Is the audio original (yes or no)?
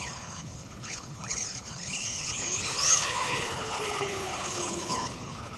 no